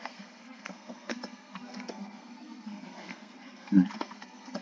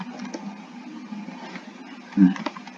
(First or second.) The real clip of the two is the second